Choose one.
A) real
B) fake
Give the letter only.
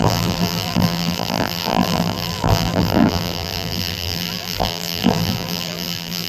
B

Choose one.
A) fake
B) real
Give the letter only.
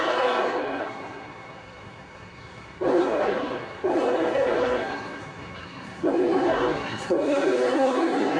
A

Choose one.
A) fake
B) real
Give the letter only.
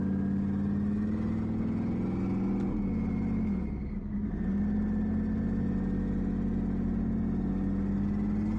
B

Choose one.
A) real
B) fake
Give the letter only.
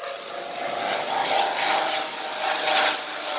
A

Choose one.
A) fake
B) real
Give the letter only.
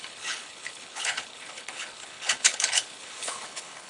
A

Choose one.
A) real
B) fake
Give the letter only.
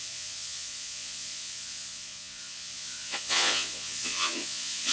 B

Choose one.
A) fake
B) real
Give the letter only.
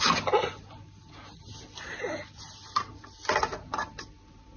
B